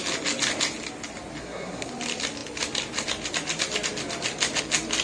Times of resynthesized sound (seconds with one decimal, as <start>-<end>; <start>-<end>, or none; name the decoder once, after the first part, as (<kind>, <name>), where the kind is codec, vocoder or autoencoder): 1.4-1.9 (codec, SNAC)